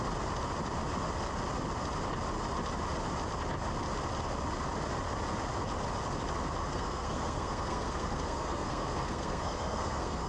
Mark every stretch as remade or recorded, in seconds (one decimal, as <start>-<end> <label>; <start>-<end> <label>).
0.0-6.6 recorded; 6.6-10.3 remade